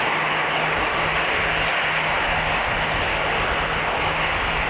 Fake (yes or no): no